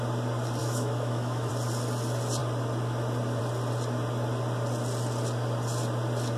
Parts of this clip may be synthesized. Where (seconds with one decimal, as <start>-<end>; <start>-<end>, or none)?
0.6-1.5